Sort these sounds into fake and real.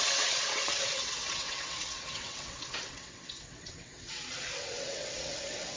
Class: fake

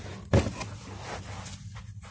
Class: real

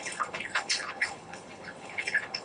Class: fake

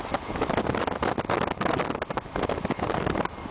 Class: real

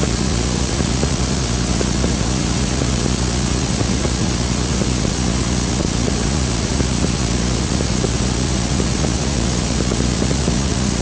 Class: fake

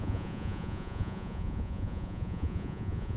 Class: fake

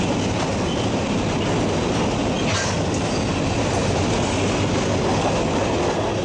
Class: real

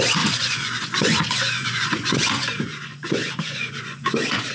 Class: fake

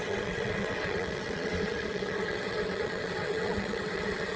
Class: fake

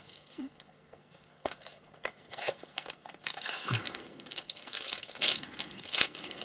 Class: fake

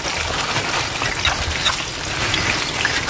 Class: real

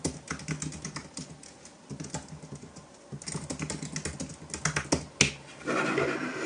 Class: real